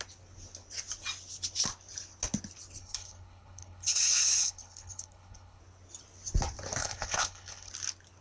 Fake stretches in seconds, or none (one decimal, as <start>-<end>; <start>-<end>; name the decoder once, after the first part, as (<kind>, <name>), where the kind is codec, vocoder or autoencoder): 2.8-5.6 (codec, HILCodec); 6.8-7.7